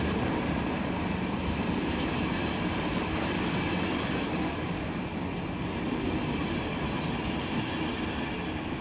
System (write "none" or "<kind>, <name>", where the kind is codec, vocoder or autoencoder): none